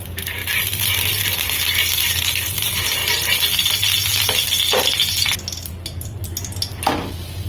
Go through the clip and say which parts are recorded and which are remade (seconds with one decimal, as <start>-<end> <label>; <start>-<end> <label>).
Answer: 0.0-0.4 remade; 0.4-2.4 recorded; 2.4-3.0 remade; 3.0-5.7 recorded; 5.7-6.3 remade; 6.3-7.5 recorded